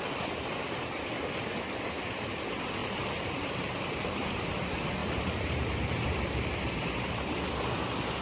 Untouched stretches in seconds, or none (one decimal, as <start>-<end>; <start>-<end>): 0.0-2.8; 4.5-5.0; 7.3-8.2